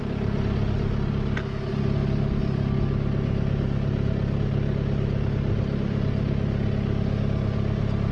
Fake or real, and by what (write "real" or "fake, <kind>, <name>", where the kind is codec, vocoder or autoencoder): real